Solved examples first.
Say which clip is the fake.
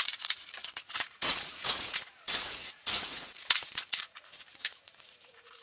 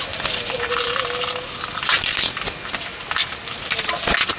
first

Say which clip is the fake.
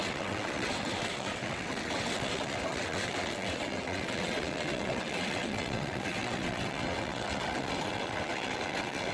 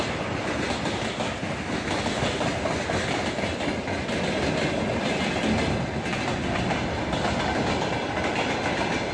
first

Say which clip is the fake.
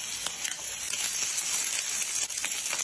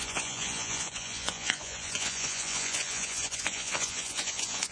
second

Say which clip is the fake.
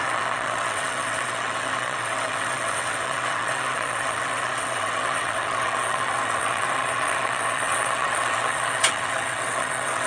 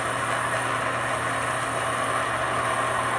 first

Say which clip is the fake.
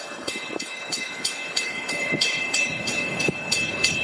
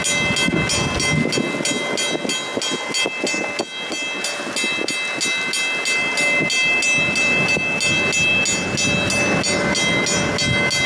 first